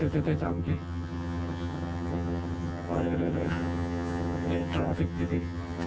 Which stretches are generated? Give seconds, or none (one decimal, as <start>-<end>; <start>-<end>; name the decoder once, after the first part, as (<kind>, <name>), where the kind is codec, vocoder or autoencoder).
0.0-5.9 (vocoder, HiFi-GAN)